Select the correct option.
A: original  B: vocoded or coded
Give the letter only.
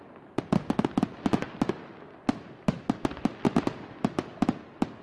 A